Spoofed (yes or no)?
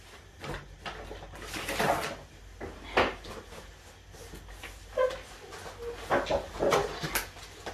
no